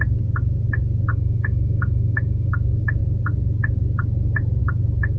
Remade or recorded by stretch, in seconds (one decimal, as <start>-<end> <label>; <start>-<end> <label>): 0.0-1.1 recorded; 1.1-2.5 remade; 2.5-5.2 recorded